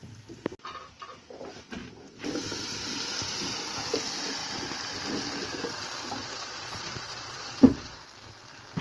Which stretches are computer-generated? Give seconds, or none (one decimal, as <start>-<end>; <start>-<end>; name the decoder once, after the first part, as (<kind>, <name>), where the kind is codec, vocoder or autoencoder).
6.2-8.0 (vocoder, Vocos)